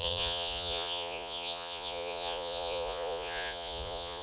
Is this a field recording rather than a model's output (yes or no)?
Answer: no